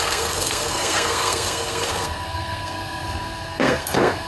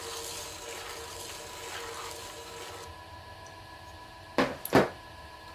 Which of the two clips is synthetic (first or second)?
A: first